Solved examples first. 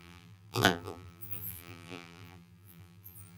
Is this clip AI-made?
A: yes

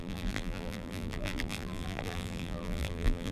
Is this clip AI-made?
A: yes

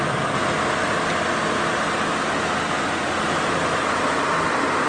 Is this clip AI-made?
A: no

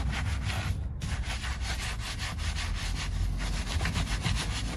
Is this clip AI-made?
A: no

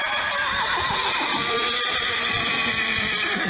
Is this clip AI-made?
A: yes